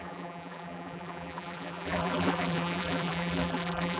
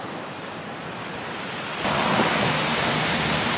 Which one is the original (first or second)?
second